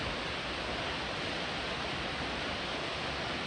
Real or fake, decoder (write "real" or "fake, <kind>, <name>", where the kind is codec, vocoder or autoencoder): real